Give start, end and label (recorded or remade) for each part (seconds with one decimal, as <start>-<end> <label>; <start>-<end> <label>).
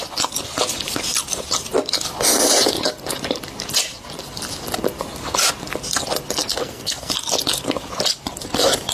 0.0-6.6 recorded; 6.6-7.1 remade; 7.1-8.9 recorded